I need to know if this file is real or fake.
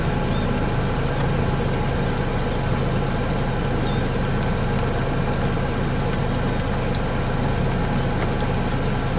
real